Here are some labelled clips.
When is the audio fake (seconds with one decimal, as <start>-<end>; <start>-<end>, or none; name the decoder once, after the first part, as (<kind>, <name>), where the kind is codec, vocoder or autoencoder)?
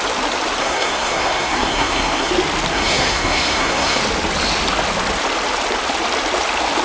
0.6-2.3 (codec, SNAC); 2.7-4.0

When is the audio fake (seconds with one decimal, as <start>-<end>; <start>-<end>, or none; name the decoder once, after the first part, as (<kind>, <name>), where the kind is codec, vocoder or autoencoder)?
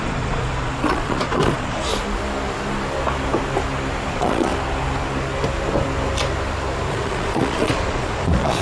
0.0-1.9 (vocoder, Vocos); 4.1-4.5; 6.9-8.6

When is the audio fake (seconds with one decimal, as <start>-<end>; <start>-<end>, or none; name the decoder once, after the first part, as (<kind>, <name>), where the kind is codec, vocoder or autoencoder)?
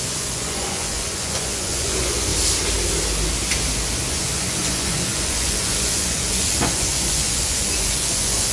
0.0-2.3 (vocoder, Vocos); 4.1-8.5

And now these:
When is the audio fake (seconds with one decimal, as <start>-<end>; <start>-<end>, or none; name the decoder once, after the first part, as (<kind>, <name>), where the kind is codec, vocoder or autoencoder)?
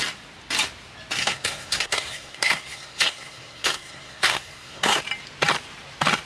1.2-5.0 (codec, SNAC)